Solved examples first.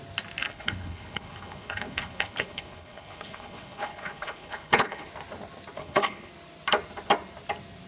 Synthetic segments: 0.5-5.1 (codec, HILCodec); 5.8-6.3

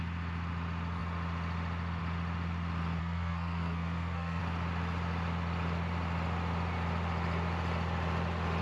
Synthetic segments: 3.0-4.4 (codec, SNAC)

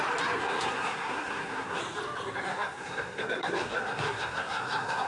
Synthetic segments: 0.4-1.8 (codec, SNAC); 2.5-5.1

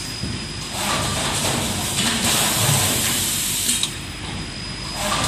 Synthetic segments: 0.0-5.3 (vocoder, BigVGAN v2)

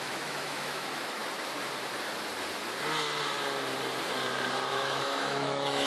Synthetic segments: 0.0-1.2 (autoencoder, DAC-VAE); 4.7-5.9